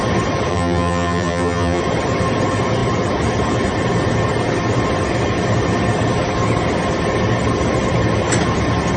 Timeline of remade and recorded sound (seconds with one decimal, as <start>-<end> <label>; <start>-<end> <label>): 0.0-0.5 recorded; 0.5-1.8 remade; 1.8-9.0 recorded